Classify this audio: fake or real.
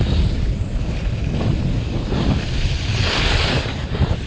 real